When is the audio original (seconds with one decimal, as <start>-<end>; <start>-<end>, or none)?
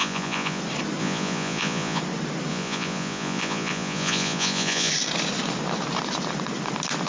0.6-1.0; 2.0-2.5; 4.9-7.1